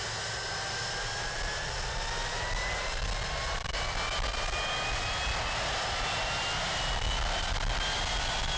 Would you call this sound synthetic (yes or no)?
no